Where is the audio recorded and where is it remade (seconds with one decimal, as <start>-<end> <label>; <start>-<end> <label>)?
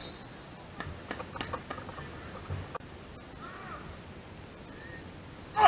0.0-5.7 recorded